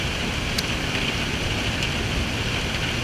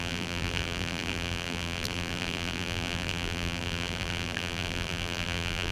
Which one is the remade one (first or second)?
second